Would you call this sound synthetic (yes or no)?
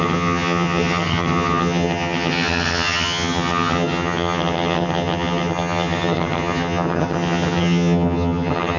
yes